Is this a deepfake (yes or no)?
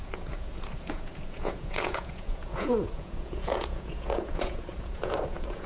yes